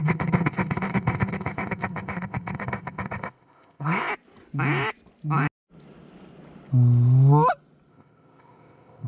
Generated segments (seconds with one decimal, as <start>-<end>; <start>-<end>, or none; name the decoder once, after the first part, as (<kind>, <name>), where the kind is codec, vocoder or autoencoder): 0.0-4.1 (codec, ZipCodec); 7.9-9.1